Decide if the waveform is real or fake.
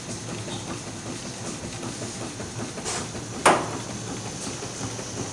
real